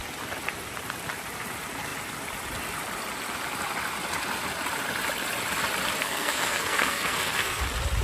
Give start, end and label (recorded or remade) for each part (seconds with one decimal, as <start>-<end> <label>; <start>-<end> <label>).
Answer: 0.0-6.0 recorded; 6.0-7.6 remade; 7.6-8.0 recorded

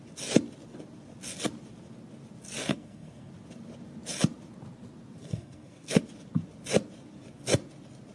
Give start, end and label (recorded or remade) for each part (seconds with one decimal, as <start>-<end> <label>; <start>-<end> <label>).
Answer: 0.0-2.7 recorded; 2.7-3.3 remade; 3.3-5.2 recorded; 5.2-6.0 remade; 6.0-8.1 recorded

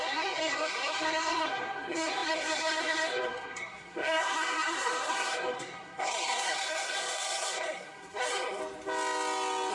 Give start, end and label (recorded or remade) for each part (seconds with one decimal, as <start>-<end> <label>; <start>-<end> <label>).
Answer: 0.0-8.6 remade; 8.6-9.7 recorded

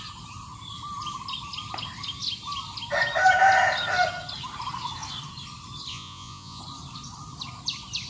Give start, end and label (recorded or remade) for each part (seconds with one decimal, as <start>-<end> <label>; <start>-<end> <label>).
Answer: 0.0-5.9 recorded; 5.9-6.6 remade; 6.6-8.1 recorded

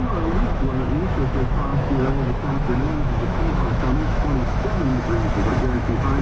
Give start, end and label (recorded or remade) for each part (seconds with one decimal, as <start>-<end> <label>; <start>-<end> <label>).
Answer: 0.0-4.9 remade; 4.9-5.5 recorded; 5.5-6.2 remade